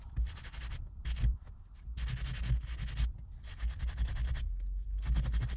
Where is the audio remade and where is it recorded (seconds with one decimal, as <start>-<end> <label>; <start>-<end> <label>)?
0.0-5.6 recorded